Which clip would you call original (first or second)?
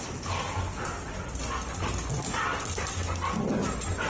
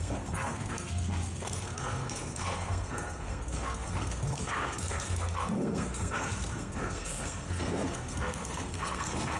first